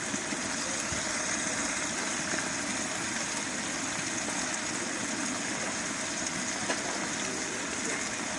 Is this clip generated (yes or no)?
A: no